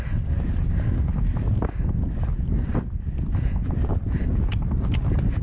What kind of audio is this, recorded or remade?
remade